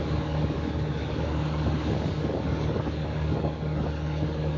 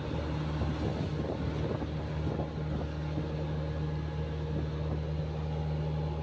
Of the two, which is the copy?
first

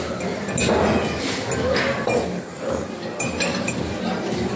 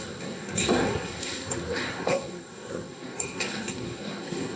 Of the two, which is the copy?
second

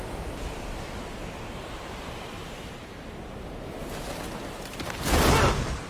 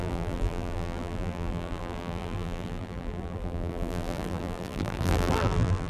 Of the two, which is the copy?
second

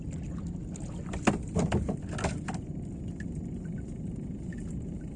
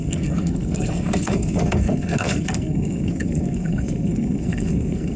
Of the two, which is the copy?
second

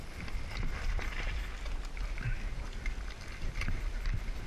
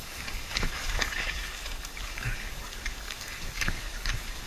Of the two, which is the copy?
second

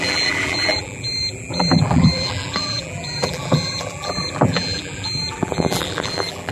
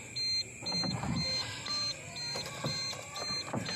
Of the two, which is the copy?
first